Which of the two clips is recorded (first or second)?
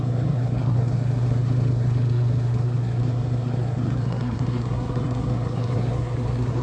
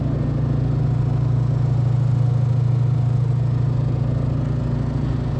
second